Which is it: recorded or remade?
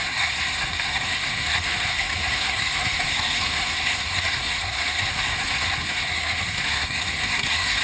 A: remade